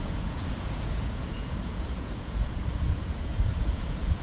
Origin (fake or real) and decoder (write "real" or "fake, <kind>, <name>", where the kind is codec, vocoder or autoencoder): fake, vocoder, Vocos